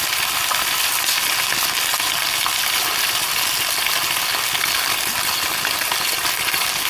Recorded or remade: recorded